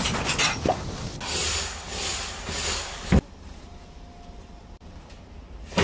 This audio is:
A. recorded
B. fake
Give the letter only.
A